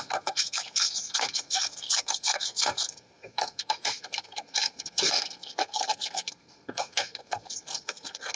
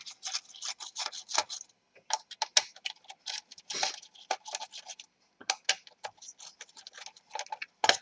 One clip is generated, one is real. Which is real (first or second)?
second